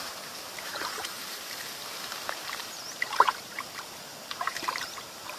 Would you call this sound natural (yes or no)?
no